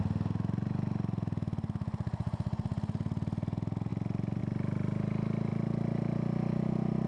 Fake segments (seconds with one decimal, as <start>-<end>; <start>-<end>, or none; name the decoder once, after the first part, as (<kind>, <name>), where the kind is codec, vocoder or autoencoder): none